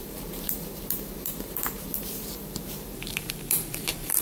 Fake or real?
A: fake